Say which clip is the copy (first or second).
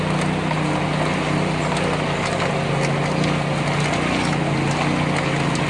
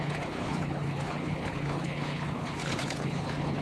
second